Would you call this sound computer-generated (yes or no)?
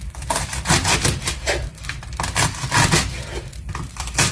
no